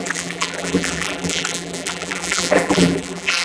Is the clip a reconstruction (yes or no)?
yes